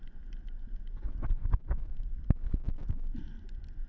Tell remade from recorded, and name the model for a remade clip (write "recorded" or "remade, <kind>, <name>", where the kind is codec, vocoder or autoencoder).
recorded